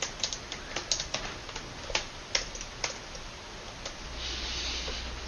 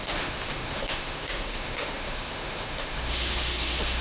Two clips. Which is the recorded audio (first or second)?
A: first